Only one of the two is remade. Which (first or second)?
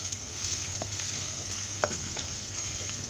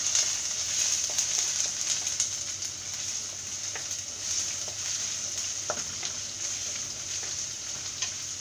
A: first